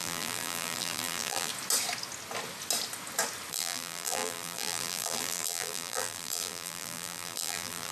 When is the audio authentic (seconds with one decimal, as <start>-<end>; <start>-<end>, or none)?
1.5-3.5